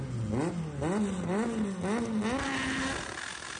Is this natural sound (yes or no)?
yes